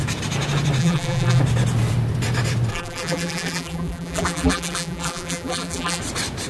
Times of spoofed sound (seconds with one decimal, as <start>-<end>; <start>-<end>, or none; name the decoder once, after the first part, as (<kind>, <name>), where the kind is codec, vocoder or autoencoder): 0.8-1.4 (vocoder, BigVGAN v2); 2.7-6.0